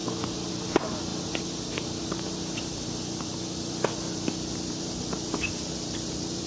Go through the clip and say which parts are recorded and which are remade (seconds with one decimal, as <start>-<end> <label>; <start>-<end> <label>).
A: 0.0-0.5 recorded; 0.5-6.5 remade